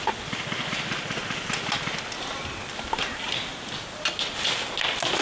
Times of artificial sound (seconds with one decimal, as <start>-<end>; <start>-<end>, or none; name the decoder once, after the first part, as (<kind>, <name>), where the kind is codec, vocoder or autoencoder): 1.2-2.7 (vocoder, BigVGAN v2); 3.5-4.3